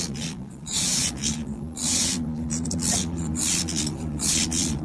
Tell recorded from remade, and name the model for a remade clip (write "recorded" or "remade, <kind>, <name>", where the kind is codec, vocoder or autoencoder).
remade, vocoder, Vocos